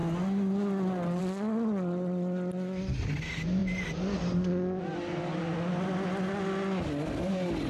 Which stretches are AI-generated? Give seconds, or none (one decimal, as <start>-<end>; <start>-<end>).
none